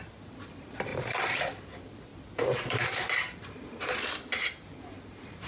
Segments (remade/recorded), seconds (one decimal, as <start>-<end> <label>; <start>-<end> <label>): 0.0-5.5 remade